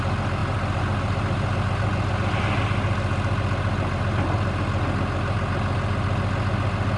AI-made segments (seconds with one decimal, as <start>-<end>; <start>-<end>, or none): none